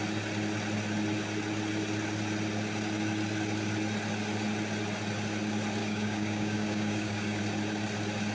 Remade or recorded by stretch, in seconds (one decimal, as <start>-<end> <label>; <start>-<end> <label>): 0.0-5.8 recorded; 5.8-7.4 remade; 7.4-8.3 recorded